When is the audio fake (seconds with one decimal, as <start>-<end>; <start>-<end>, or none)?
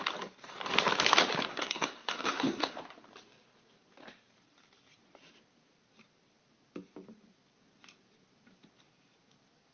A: 1.5-2.8